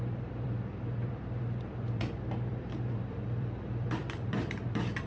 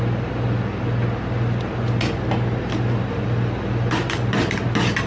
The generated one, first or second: first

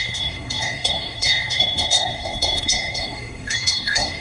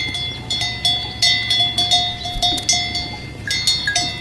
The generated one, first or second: first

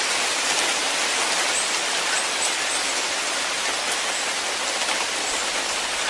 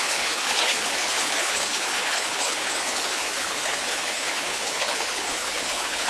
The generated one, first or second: second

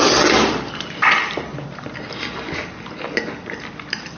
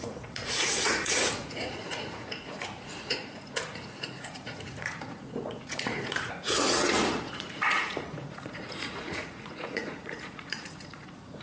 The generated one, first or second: second